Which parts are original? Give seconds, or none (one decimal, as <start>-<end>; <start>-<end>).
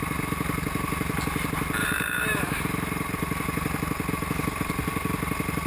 0.0-1.8; 2.6-5.7